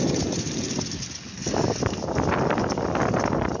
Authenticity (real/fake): real